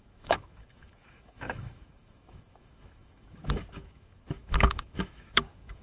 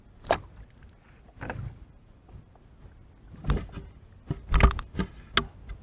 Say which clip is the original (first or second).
second